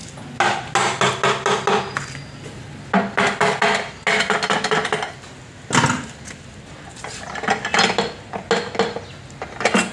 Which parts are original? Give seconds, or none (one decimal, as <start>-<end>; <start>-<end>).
0.0-9.9